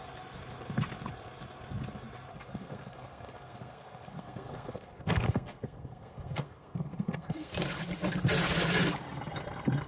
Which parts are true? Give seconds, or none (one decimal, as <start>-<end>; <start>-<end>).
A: 0.0-2.3; 7.5-9.9